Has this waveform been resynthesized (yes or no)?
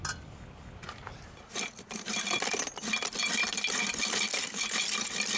no